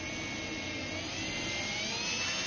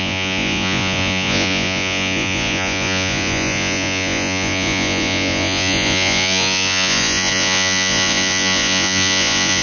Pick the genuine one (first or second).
first